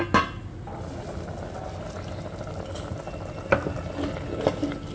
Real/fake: real